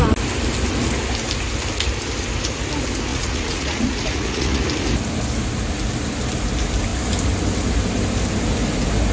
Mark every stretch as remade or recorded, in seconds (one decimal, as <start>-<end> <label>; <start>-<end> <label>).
0.0-3.1 recorded; 3.1-4.6 remade; 4.6-9.1 recorded